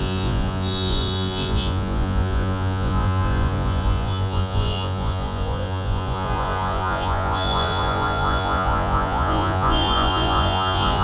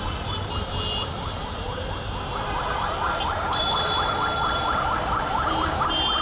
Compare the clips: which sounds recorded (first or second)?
second